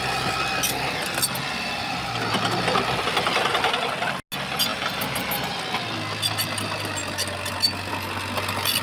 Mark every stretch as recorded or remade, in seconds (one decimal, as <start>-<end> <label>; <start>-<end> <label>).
0.0-8.8 recorded